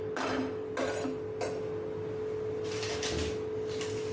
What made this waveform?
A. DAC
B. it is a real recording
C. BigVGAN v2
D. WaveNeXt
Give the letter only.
B